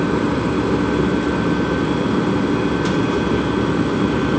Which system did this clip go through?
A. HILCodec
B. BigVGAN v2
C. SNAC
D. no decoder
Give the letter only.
D